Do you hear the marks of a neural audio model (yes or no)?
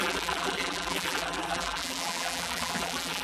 yes